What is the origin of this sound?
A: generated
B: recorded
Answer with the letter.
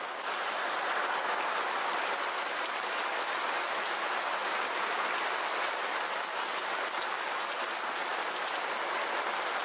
B